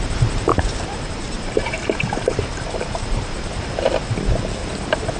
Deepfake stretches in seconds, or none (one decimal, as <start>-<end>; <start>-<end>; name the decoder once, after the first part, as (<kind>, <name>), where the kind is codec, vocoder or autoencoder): 0.5-3.6 (vocoder, BigVGAN v2); 4.6-5.2